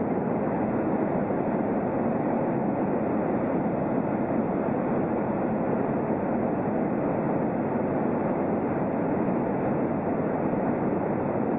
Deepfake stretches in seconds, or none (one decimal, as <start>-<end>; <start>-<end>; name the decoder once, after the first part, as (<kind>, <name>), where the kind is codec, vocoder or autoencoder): none